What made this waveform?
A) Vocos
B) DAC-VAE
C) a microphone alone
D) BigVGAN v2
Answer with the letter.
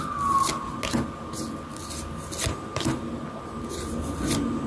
C